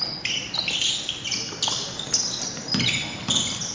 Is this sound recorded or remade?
recorded